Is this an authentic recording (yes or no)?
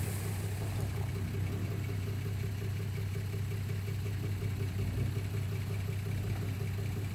yes